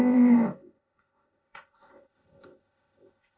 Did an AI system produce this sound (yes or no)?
yes